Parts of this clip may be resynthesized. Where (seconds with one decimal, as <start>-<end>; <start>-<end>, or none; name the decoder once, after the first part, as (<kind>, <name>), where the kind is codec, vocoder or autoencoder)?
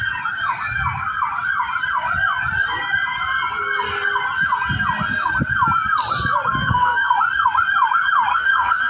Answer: 6.6-7.2 (codec, SNAC); 8.3-8.9